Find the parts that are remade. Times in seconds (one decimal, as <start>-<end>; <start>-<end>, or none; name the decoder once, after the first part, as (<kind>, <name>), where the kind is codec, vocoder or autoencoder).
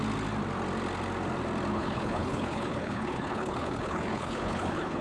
1.7-5.0 (codec, HILCodec)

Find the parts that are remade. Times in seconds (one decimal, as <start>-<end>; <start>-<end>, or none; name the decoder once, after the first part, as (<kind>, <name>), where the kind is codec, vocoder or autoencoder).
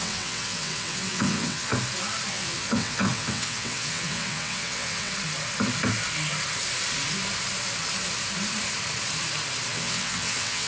0.0-1.7 (vocoder, WaveNeXt); 2.3-5.1; 9.7-10.7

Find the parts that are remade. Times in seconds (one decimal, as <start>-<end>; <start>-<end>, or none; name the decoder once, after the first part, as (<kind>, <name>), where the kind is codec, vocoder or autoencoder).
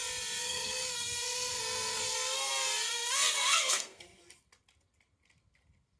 0.4-2.5 (codec, SNAC); 2.9-4.0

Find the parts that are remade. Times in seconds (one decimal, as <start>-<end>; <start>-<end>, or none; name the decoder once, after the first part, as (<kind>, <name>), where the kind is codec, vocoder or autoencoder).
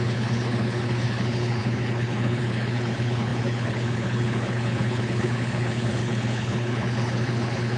0.0-7.8 (codec, HILCodec)